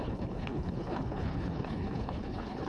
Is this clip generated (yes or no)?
yes